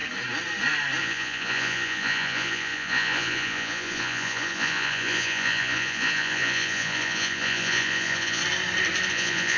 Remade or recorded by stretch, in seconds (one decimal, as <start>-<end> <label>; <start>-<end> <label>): 0.0-1.0 recorded; 1.0-8.4 remade; 8.4-9.1 recorded; 9.1-9.6 remade